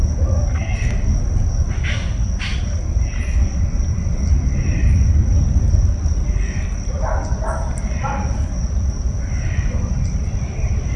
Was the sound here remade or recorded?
recorded